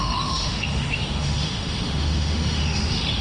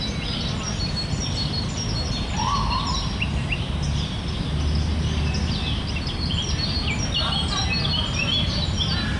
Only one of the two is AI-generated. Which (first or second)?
first